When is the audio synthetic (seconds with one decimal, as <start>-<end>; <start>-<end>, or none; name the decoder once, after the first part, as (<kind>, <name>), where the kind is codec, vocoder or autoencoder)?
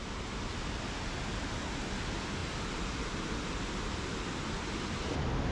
none